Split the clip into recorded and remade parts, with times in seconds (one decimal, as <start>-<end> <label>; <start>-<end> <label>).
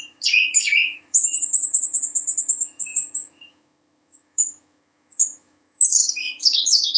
0.0-7.0 remade